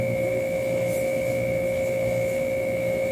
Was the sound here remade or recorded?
remade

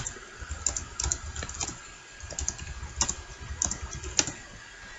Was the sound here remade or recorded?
recorded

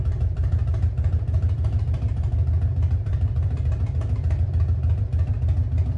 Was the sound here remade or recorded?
remade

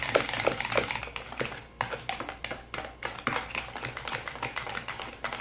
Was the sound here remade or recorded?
recorded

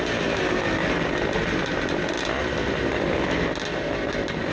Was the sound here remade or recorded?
recorded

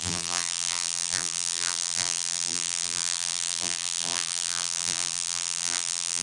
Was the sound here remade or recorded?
remade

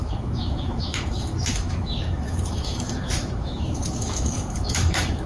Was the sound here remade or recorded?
remade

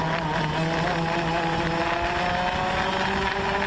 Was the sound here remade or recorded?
recorded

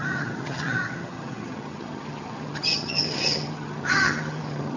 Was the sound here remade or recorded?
remade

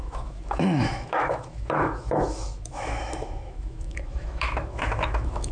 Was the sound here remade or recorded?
remade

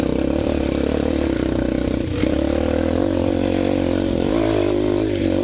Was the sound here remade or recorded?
recorded